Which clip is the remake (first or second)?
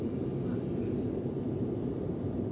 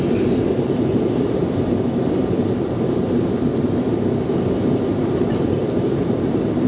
second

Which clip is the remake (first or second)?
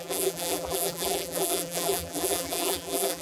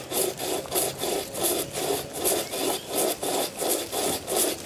first